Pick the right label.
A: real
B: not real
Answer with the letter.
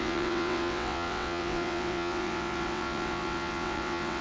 B